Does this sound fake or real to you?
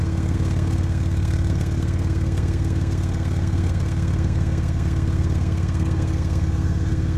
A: fake